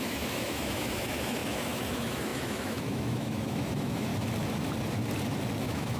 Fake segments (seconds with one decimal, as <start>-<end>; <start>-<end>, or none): 0.0-4.1; 5.6-6.0